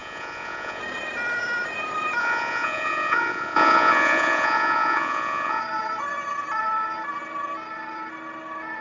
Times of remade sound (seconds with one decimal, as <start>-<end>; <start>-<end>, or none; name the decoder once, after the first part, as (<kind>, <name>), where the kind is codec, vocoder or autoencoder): 0.0-0.8 (vocoder, Vocos); 2.2-5.6